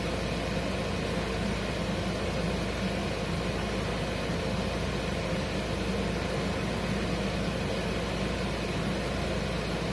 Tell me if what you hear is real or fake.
real